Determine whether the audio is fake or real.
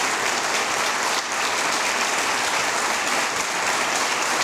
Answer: fake